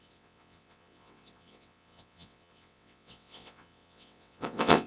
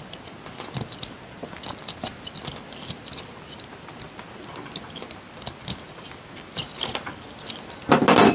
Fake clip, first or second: first